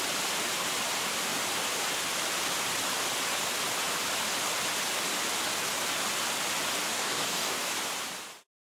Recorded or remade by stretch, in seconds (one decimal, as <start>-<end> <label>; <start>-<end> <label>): 0.0-6.9 recorded; 6.9-7.7 remade; 7.7-8.7 recorded